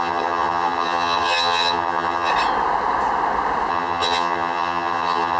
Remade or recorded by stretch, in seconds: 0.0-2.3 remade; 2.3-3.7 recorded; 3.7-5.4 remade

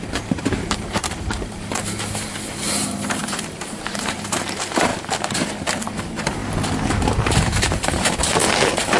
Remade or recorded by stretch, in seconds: 0.0-4.9 remade; 4.9-6.0 recorded; 6.0-6.4 remade; 6.4-7.2 recorded; 7.2-8.4 remade; 8.4-9.0 recorded

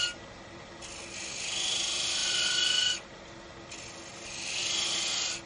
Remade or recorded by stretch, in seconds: 0.0-5.5 recorded

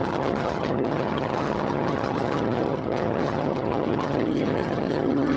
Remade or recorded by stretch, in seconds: 0.0-5.4 remade

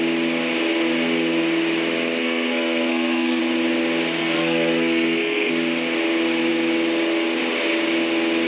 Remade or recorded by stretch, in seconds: 0.0-2.2 recorded; 2.2-3.4 remade; 3.4-4.2 recorded; 4.2-5.5 remade; 5.5-8.5 recorded